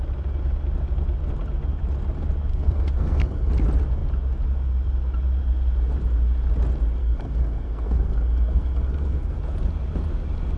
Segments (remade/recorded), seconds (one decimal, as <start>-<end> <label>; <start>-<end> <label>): 0.0-2.5 recorded; 2.5-3.5 remade; 3.5-7.0 recorded; 7.0-9.4 remade; 9.4-10.6 recorded